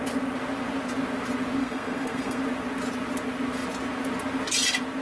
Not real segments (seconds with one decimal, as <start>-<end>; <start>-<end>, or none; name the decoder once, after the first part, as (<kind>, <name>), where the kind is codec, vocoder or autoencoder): 1.6-2.4 (codec, SNAC)